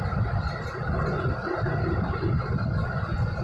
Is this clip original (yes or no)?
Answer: yes